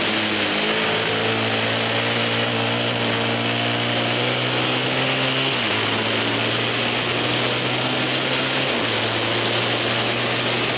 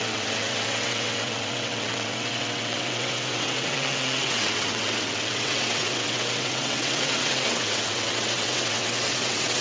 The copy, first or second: second